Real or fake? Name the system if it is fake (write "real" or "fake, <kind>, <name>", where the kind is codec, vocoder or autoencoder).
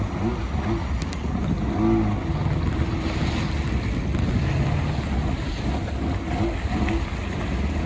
real